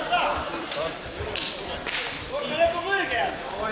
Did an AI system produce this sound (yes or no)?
yes